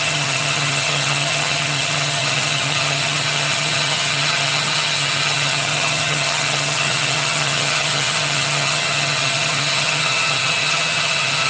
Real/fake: fake